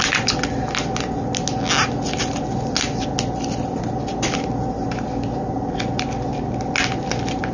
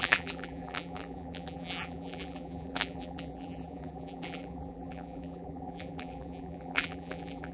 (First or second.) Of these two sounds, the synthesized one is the second